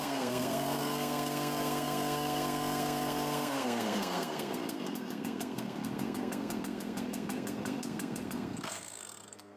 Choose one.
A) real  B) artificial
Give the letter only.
B